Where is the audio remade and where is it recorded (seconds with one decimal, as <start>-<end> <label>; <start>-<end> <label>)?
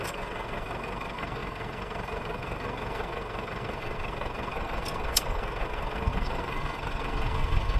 0.0-7.8 remade